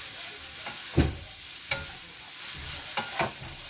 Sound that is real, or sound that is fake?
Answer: real